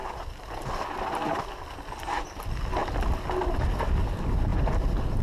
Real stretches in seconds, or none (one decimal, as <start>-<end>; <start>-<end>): 0.0-5.2